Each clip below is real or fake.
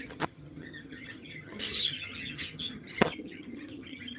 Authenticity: fake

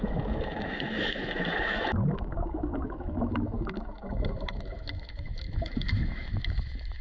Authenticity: fake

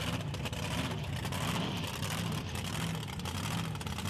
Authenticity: real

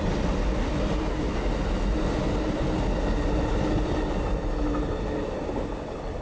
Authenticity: real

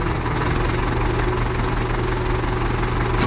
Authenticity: real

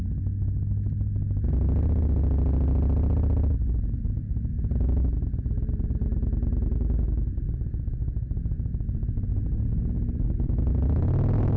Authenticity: real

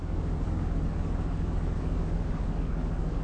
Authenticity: fake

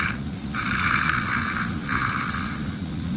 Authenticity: fake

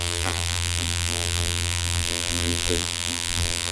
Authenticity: fake